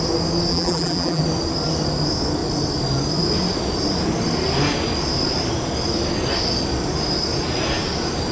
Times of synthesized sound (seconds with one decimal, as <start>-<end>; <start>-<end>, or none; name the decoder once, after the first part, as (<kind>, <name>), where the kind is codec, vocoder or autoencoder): 0.5-1.2 (vocoder, BigVGAN v2)